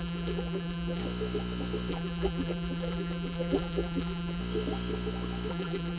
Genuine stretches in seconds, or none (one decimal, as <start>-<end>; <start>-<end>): 1.0-1.9; 4.4-5.5